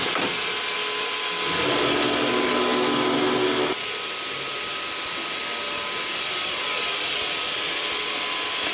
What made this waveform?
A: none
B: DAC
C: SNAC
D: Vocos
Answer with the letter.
A